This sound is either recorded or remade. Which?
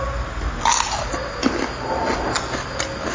recorded